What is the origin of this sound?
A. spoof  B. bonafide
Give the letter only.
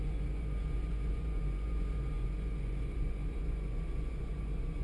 A